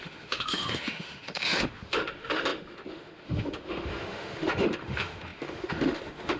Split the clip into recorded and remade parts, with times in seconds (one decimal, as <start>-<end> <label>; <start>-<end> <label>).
0.0-6.4 remade